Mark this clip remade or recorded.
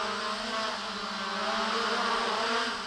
recorded